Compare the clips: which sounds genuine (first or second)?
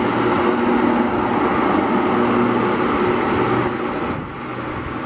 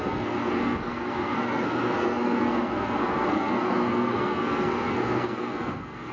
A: first